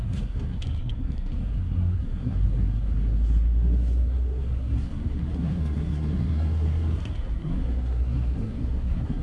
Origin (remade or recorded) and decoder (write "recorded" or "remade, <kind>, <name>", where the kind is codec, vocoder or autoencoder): remade, codec, SNAC